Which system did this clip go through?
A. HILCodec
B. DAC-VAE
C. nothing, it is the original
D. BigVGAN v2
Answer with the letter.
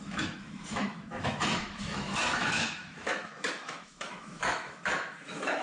B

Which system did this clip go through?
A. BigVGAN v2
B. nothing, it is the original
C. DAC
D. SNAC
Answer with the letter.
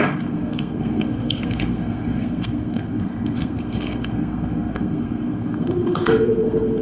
D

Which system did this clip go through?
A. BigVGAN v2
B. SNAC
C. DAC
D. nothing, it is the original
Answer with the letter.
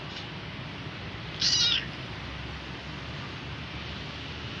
D